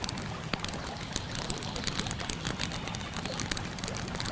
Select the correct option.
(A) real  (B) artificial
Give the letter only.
A